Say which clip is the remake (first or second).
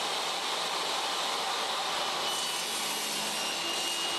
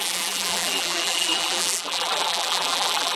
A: second